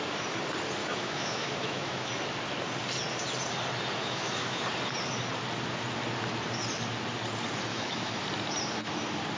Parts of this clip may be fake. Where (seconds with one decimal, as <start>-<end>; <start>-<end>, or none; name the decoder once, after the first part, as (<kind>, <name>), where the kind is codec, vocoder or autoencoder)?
0.8-2.1 (autoencoder, DAC-VAE); 4.0-4.6; 7.7-8.2